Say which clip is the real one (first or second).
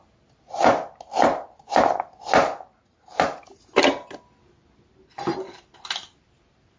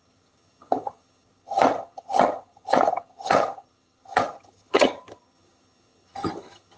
first